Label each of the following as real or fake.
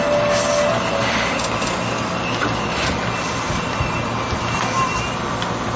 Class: real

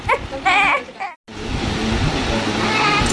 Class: real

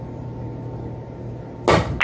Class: real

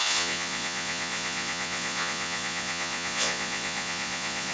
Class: fake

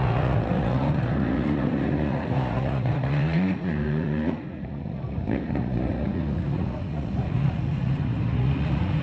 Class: fake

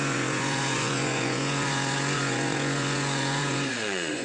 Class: fake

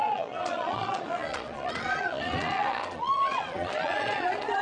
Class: fake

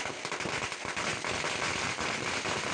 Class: real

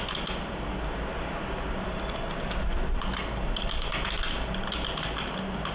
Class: real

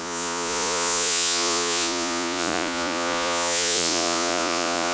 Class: fake